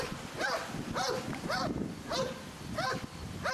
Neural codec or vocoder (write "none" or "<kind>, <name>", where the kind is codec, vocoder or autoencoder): none